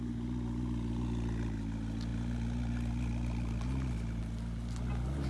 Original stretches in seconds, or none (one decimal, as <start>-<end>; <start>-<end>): 0.0-5.3